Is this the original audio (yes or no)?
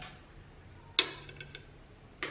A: yes